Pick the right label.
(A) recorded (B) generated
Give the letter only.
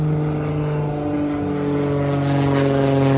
A